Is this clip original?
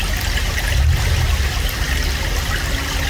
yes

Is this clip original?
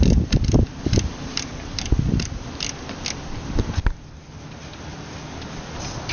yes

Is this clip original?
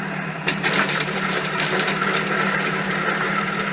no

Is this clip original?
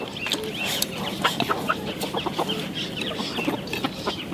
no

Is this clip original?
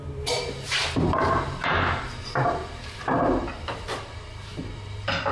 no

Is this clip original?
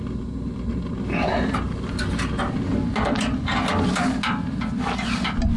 yes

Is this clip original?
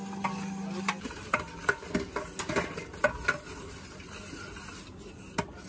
yes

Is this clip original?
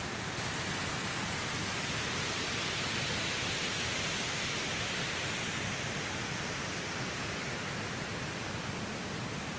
yes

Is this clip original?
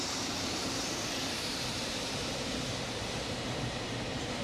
no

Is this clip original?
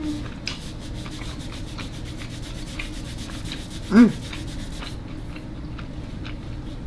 yes